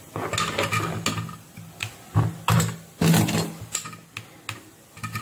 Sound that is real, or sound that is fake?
real